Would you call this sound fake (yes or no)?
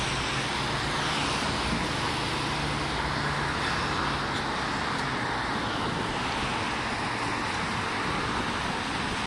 no